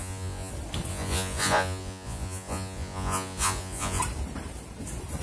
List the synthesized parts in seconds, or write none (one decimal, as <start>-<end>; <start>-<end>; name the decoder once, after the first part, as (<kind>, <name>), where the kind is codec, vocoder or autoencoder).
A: 0.0-0.5 (vocoder, Vocos); 0.9-4.0